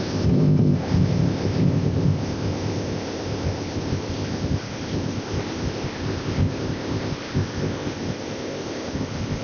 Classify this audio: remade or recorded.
remade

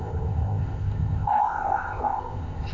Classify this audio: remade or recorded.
remade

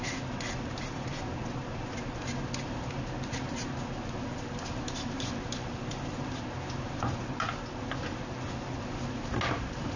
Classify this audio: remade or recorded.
recorded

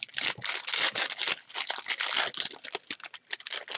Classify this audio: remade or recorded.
recorded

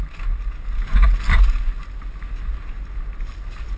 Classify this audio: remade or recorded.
recorded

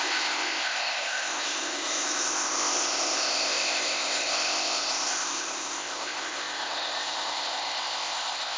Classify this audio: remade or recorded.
remade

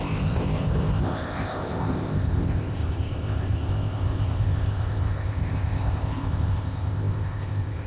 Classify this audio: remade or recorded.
remade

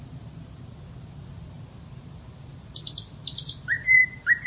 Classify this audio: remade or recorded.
recorded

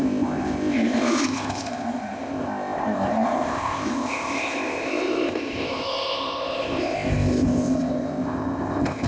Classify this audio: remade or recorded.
remade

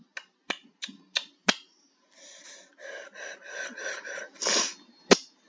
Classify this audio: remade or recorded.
recorded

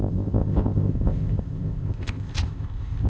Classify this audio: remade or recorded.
remade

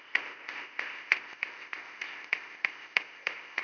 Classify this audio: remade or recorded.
remade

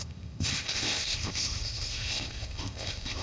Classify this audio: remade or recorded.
remade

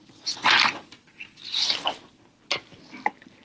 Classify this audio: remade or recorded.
recorded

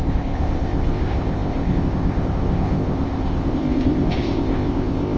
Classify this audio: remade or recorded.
remade